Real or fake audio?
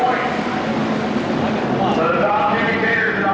real